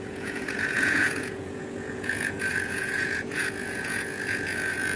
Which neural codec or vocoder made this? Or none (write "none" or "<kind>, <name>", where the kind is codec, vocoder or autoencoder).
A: vocoder, Vocos